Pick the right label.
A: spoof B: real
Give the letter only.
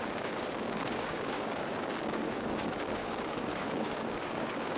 A